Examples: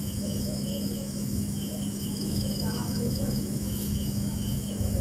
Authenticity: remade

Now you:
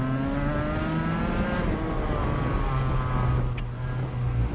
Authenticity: recorded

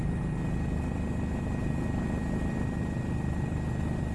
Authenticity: recorded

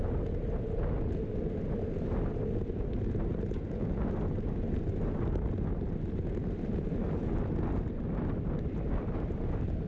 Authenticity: recorded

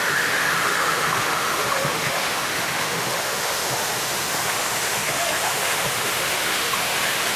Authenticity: remade